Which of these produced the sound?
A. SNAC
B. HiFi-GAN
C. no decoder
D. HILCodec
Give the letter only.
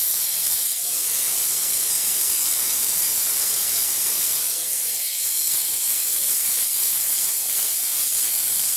A